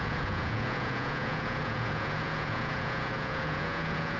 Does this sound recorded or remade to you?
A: remade